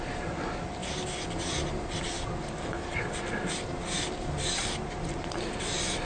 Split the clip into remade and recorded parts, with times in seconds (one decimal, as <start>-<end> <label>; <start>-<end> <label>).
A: 0.0-6.0 recorded